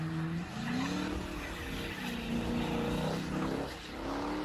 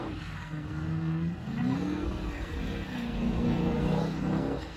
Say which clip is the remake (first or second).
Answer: second